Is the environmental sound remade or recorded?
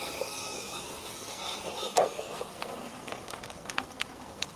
remade